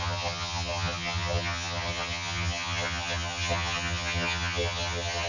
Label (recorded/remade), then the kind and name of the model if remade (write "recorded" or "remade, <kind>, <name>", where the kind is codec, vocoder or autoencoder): remade, vocoder, HiFi-GAN